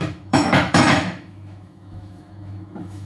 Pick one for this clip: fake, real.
fake